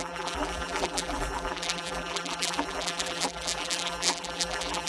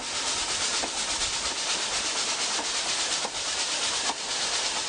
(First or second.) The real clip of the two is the second